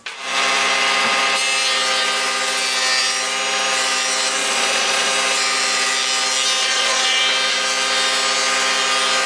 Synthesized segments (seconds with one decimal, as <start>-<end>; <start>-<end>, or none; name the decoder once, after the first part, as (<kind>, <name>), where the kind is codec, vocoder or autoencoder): 4.4-5.1 (vocoder, Vocos); 6.6-7.2